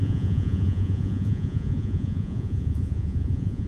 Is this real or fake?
fake